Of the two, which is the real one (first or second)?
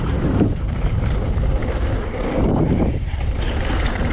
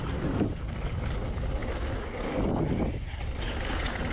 second